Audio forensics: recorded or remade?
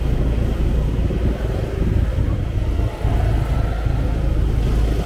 recorded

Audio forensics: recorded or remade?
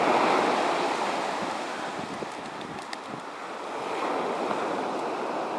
recorded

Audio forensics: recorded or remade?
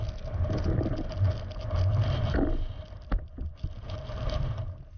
recorded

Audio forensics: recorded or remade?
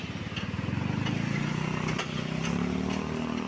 recorded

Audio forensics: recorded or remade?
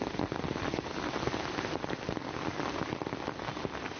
recorded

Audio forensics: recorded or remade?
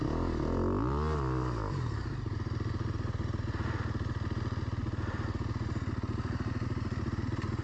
recorded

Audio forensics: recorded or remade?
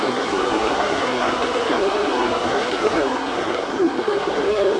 remade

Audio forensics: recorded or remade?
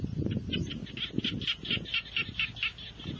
recorded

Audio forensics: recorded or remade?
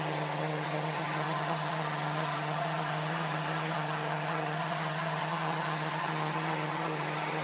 remade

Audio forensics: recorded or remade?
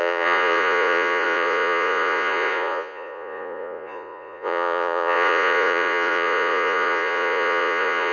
remade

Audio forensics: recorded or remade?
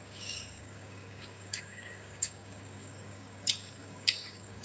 remade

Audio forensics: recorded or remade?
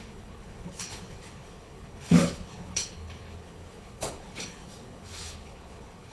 remade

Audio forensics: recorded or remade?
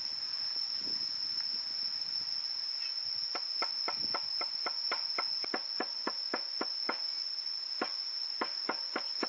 recorded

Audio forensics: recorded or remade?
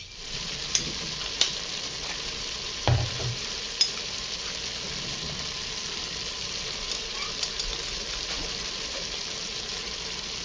remade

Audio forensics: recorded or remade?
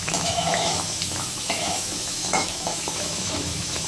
remade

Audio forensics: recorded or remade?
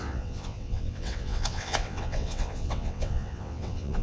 remade